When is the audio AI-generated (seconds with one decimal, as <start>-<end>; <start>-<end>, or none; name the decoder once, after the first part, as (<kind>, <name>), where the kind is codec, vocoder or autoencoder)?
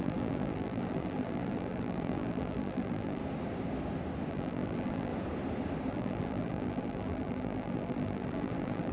0.0-3.2 (vocoder, BigVGAN v2); 4.3-5.1; 5.9-8.9